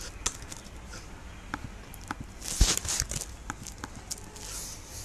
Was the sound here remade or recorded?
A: recorded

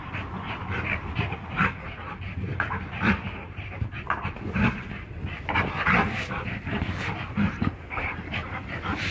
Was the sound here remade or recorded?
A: remade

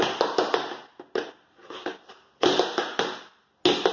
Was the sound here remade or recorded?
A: recorded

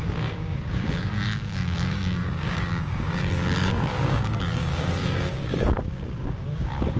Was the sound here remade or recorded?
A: remade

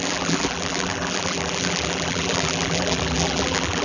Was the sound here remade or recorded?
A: remade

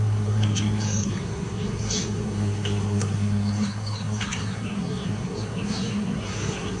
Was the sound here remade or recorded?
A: remade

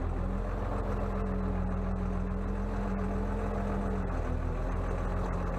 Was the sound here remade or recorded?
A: recorded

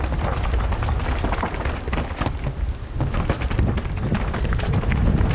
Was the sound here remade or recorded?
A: recorded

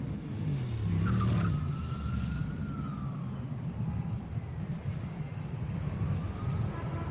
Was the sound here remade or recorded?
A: recorded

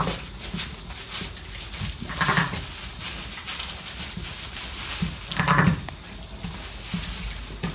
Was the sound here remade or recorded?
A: recorded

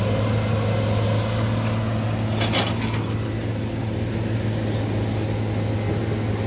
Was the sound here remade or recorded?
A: recorded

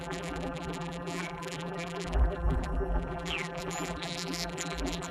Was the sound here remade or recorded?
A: remade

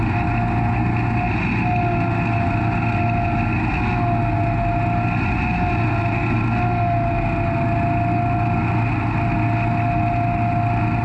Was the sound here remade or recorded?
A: recorded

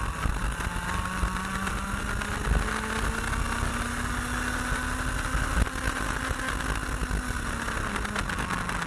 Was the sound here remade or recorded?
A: recorded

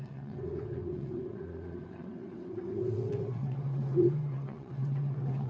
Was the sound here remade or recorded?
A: remade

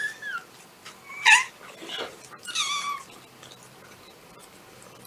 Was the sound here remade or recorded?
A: recorded